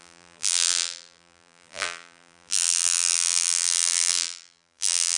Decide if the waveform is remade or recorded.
remade